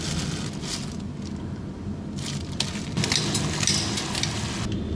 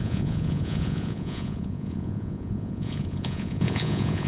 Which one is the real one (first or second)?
first